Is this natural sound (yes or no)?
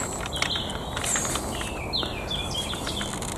yes